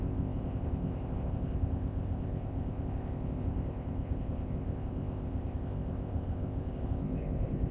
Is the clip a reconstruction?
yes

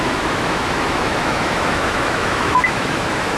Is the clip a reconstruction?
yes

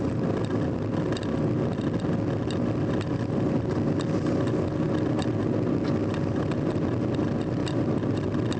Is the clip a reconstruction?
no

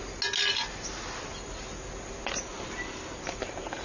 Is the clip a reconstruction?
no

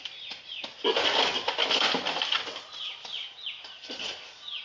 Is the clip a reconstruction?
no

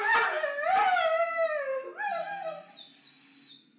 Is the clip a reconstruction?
no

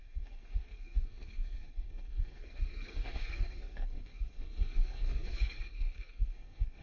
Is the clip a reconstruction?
yes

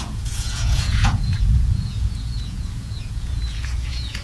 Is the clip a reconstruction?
yes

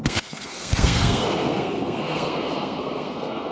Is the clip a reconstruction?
yes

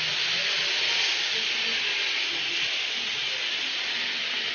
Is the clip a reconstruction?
no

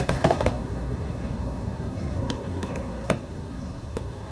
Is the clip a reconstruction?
yes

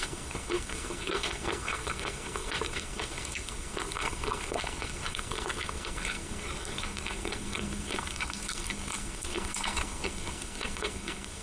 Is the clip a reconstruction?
yes